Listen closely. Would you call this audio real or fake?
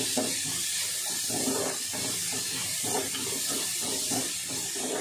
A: real